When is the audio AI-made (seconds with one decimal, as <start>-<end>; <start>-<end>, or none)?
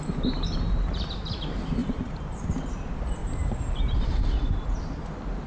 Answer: 1.8-2.4; 3.2-5.1